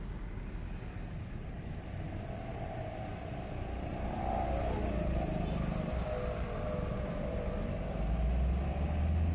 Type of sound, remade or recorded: recorded